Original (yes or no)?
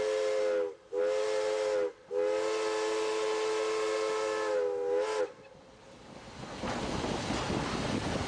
yes